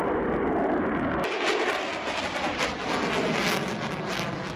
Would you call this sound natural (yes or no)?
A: yes